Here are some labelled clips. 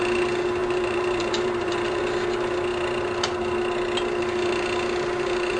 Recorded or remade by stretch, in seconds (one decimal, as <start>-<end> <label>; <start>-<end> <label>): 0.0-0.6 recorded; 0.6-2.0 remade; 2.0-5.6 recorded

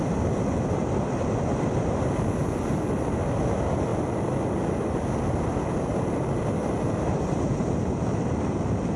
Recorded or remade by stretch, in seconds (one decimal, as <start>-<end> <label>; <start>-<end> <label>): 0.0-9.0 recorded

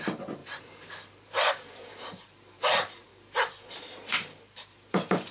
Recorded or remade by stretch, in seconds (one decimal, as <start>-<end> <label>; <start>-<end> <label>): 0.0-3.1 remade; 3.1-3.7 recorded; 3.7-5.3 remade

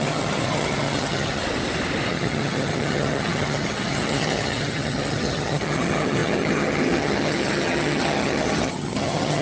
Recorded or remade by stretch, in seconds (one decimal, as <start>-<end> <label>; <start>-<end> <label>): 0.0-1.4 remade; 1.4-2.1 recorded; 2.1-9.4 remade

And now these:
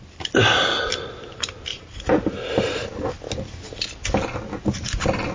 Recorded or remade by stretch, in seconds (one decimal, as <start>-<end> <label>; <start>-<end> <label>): 0.0-5.3 recorded

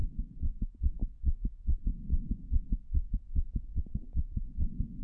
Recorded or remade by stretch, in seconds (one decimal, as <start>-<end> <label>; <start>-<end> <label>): 0.0-5.0 recorded

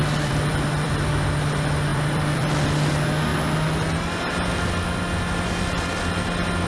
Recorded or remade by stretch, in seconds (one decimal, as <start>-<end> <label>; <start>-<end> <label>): 0.0-1.1 remade; 1.1-1.9 recorded; 1.9-2.5 remade; 2.5-6.7 recorded